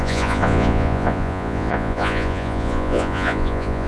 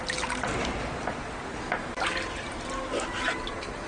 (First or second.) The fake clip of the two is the first